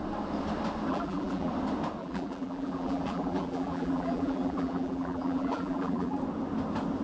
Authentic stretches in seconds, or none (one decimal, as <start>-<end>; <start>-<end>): 0.0-0.9; 1.5-2.0; 6.2-7.0